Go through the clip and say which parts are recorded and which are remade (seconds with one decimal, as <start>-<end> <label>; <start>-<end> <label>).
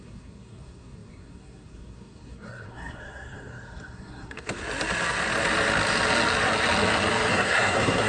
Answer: 0.0-4.6 remade; 4.6-7.3 recorded; 7.3-8.1 remade